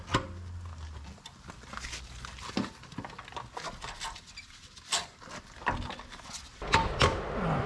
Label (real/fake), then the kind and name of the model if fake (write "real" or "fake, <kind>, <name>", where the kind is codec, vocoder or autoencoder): real